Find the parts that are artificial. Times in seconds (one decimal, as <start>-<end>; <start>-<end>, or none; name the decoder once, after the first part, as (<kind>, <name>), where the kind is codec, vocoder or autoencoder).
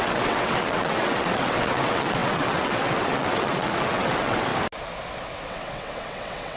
0.0-4.5 (vocoder, WaveNeXt); 5.5-6.6